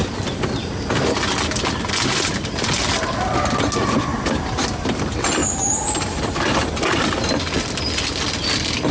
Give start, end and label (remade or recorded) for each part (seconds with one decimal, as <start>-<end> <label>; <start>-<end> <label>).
0.0-8.9 recorded